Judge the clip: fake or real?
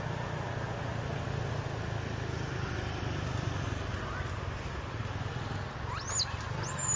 real